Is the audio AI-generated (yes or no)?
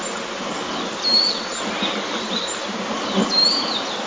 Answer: no